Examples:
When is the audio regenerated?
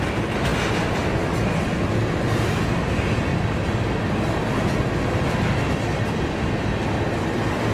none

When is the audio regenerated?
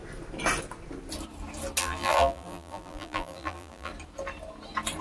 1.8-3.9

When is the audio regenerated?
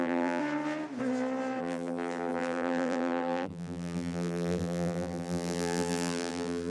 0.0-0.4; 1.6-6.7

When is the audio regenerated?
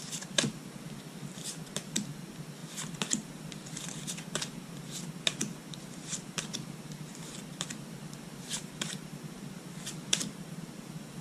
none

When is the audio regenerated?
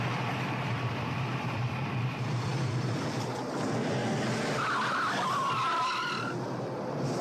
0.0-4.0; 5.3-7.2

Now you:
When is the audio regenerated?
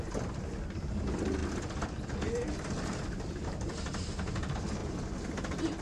1.4-2.8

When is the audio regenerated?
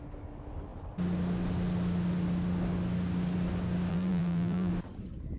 3.9-4.7